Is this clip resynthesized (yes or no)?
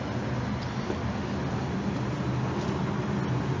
no